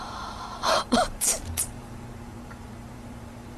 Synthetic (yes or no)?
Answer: yes